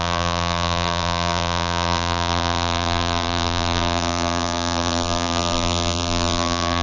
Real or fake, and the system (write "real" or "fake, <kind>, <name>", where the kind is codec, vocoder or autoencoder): fake, vocoder, BigVGAN v2